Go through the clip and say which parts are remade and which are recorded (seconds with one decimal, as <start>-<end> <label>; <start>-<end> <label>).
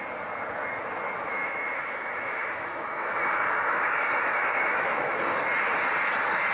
0.0-1.3 recorded; 1.3-5.2 remade; 5.2-6.5 recorded